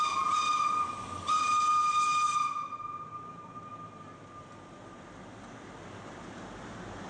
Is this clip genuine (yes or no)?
yes